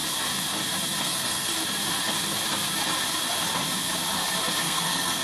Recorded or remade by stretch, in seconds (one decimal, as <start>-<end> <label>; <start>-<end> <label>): 0.0-1.0 recorded; 1.0-1.5 remade; 1.5-4.6 recorded; 4.6-5.2 remade